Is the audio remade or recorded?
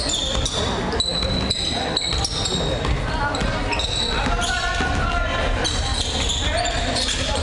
recorded